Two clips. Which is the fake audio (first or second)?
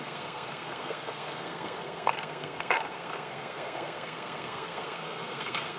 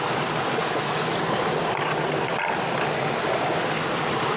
first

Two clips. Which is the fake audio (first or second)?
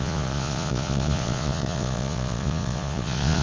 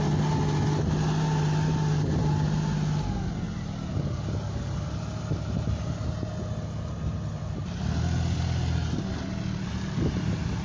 first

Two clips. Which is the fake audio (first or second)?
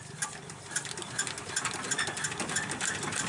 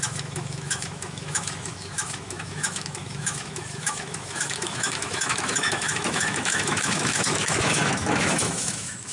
second